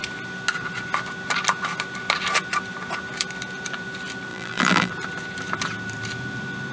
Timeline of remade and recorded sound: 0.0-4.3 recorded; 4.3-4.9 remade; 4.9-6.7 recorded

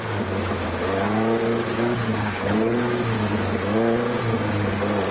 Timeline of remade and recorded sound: 0.0-2.2 recorded; 2.2-2.8 remade; 2.8-5.1 recorded

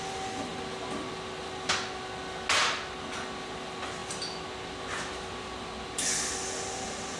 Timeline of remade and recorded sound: 0.0-7.2 recorded

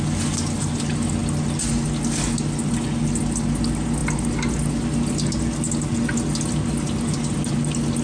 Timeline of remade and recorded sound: 0.0-8.0 recorded

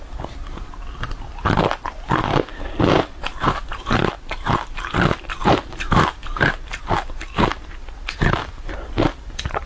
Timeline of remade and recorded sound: 0.0-2.5 recorded; 2.5-4.1 remade; 4.1-5.4 recorded; 5.4-6.5 remade; 6.5-9.7 recorded

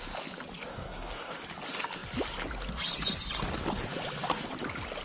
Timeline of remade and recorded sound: 0.0-0.7 recorded; 0.7-1.3 remade; 1.3-5.0 recorded

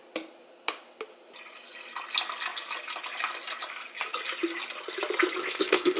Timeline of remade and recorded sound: 0.0-5.4 recorded; 5.4-6.0 remade

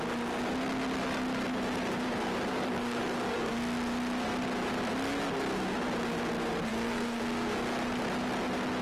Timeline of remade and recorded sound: 0.0-2.5 recorded; 2.5-3.5 remade; 3.5-6.7 recorded; 6.7-7.2 remade; 7.2-8.8 recorded